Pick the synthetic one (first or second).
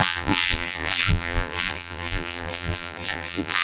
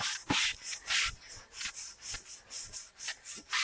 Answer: first